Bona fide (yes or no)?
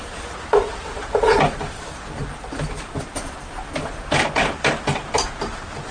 yes